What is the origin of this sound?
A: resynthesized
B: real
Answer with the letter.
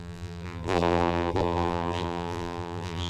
A